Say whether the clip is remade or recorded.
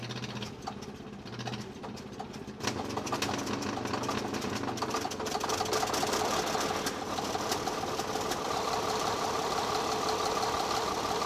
remade